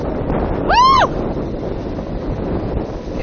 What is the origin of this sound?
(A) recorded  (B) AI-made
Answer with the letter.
A